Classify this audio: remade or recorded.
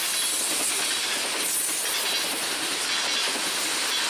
recorded